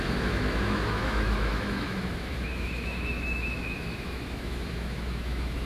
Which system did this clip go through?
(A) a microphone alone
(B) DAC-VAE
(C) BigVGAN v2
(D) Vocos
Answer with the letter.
B